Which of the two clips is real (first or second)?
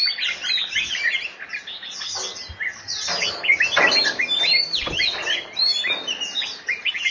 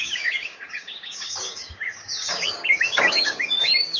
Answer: first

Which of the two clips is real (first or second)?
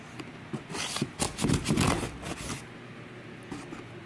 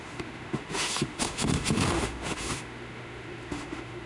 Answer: first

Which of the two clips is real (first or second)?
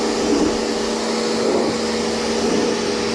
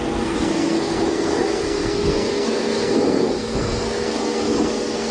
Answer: first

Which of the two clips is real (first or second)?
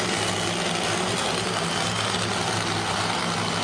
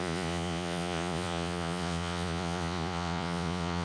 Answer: first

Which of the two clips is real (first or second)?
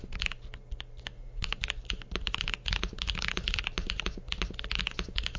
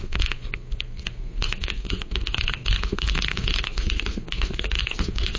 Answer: first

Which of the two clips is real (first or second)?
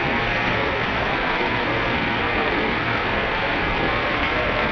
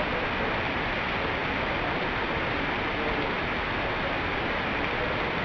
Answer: second